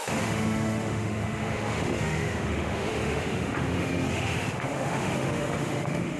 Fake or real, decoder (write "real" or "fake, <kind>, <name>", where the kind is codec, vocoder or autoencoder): fake, autoencoder, DAC-VAE